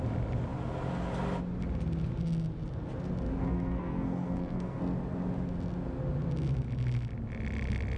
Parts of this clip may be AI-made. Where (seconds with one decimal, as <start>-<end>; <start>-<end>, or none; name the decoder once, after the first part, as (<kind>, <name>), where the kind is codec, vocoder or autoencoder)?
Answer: 3.4-4.8 (codec, SNAC)